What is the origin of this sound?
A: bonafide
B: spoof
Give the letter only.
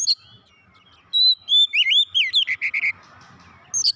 A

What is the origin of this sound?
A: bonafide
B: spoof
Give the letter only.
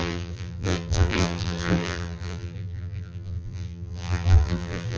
B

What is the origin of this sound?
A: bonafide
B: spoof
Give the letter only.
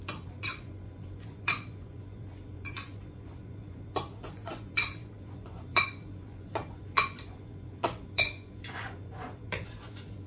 B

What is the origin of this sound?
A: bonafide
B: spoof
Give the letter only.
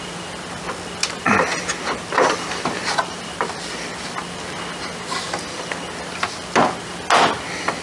A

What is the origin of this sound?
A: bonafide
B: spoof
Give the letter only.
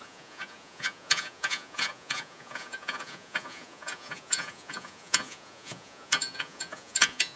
B